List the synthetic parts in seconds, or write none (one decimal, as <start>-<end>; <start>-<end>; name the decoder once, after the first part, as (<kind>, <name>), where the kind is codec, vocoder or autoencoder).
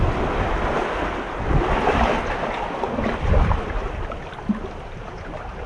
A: 0.0-1.0 (vocoder, BigVGAN v2); 2.4-5.7